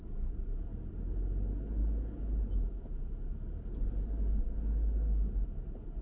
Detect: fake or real real